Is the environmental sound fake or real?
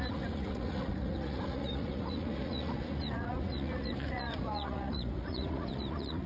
fake